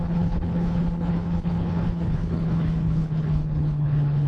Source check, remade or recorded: remade